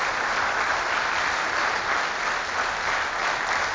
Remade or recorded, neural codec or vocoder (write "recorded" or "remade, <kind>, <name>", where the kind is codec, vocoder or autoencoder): recorded